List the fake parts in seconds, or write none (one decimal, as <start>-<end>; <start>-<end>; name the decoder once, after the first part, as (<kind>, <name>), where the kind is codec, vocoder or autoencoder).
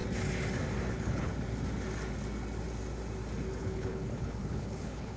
0.9-1.3 (codec, HILCodec); 3.6-5.2